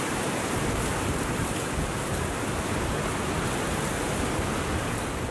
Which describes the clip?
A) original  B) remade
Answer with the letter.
A